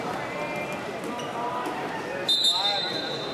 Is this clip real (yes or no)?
yes